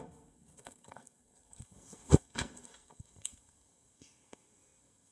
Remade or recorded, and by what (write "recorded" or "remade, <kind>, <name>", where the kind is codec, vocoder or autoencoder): remade, codec, SNAC